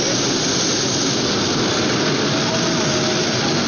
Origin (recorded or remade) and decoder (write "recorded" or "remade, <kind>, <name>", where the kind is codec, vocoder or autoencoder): recorded